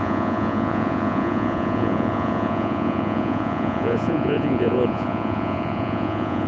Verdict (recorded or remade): remade